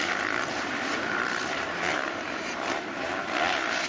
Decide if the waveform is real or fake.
fake